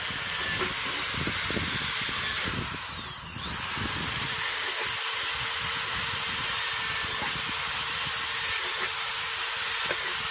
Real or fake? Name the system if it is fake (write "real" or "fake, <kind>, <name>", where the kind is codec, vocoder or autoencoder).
real